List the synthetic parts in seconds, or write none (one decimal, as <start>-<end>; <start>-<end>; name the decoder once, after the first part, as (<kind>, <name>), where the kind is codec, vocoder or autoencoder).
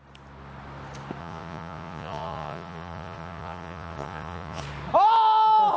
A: 1.2-4.6 (vocoder, Vocos)